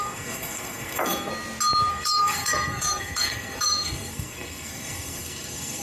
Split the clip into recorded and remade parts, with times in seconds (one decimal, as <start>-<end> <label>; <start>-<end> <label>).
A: 0.0-1.3 remade; 1.3-1.9 recorded; 1.9-5.8 remade